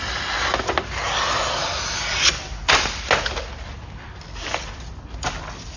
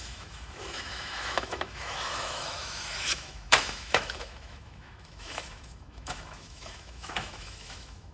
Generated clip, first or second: second